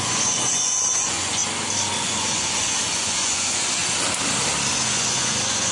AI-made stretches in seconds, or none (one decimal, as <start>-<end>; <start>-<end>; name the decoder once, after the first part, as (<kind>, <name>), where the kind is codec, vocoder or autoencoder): 0.0-1.4 (vocoder, Vocos); 2.0-3.8; 4.7-5.7